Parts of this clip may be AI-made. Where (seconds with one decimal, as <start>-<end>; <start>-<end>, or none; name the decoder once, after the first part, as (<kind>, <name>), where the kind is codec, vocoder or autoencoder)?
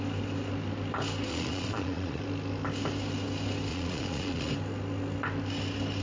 1.3-2.2 (vocoder, Vocos); 3.7-4.5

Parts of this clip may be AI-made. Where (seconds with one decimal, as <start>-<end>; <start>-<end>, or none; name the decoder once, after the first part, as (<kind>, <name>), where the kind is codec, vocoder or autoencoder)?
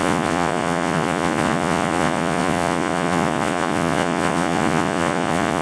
0.0-5.6 (vocoder, Vocos)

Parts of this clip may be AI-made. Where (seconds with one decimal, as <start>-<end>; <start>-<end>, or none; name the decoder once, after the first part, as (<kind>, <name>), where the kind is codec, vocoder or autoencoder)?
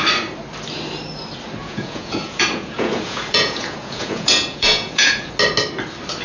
1.6-5.3 (vocoder, Vocos)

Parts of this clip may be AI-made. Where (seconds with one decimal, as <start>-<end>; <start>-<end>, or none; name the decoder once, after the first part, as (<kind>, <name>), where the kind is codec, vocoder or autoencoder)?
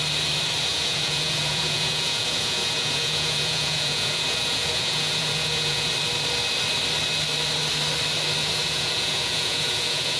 0.7-5.9 (vocoder, Vocos); 8.4-10.2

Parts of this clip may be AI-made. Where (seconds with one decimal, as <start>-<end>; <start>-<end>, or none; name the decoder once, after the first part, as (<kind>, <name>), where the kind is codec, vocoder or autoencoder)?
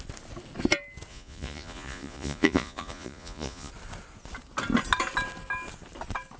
1.1-3.7 (vocoder, Vocos)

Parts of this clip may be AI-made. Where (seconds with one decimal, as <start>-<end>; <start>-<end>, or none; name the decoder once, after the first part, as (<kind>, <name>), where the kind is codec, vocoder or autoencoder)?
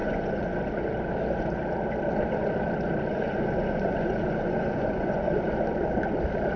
0.0-0.6 (vocoder, Vocos); 3.1-5.3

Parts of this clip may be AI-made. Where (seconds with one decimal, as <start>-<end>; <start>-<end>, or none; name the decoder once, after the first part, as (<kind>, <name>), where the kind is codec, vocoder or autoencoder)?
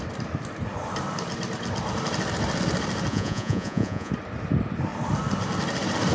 3.1-4.1 (vocoder, Vocos)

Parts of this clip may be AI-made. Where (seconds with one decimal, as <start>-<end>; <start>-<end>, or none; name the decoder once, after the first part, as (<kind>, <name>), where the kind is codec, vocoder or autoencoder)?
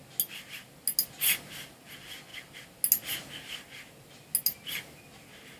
none